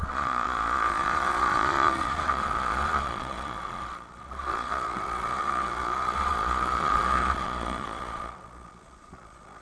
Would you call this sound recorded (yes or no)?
no